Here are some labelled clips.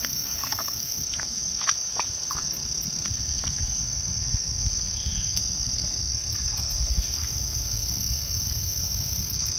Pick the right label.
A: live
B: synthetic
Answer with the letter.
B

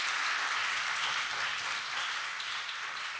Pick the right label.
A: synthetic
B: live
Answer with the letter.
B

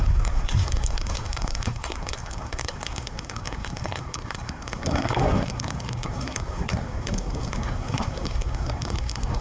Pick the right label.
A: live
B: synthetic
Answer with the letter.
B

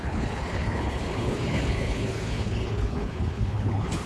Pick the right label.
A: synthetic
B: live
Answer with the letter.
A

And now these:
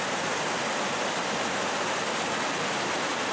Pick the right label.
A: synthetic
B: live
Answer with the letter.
B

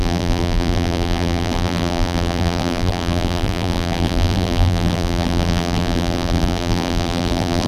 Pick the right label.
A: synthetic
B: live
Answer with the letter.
A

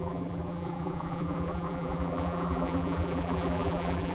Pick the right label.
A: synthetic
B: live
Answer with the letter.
A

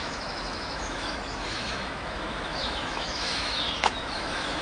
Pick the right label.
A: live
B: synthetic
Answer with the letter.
B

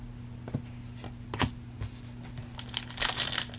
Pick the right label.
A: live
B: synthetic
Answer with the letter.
A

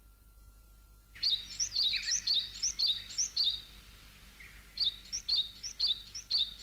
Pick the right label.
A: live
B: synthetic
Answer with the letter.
B